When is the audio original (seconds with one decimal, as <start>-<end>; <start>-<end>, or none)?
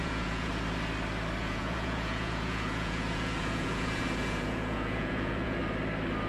0.5-1.4; 5.6-6.3